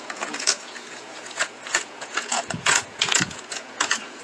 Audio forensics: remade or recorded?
remade